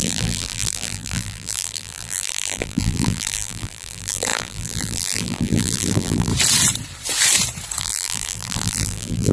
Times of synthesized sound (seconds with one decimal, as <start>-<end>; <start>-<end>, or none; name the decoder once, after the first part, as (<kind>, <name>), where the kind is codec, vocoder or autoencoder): 0.0-6.3 (vocoder, BigVGAN v2); 7.8-9.3